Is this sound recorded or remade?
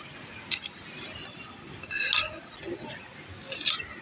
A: recorded